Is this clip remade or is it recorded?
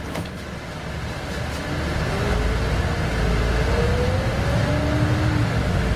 recorded